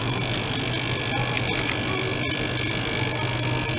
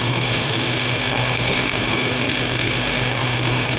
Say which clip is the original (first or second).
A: first